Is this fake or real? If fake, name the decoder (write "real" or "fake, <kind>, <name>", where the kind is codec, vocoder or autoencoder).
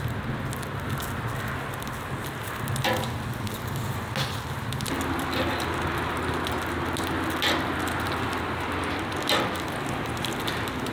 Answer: real